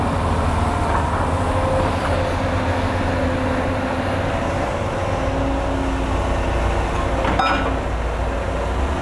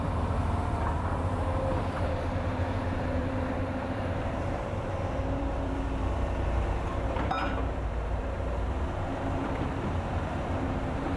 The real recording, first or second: first